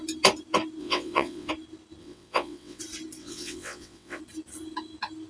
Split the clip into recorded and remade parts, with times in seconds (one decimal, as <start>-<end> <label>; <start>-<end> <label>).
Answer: 0.0-0.8 recorded; 0.8-1.5 remade; 1.5-2.0 recorded; 2.0-2.8 remade; 2.8-3.2 recorded; 3.2-4.2 remade; 4.2-5.3 recorded

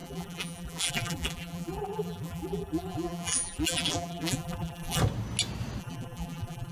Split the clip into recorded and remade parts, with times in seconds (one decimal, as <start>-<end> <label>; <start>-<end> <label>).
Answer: 0.0-5.0 remade; 5.0-5.8 recorded; 5.8-6.7 remade